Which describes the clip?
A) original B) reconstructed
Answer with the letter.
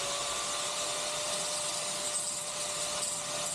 A